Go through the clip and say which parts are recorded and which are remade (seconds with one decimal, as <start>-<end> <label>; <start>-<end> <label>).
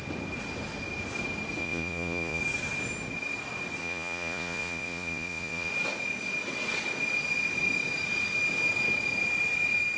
0.0-1.6 recorded; 1.6-2.4 remade; 2.4-3.8 recorded; 3.8-5.7 remade; 5.7-10.0 recorded